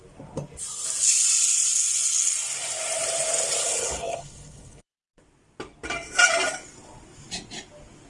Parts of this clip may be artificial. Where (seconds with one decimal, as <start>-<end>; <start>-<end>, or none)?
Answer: 3.6-5.1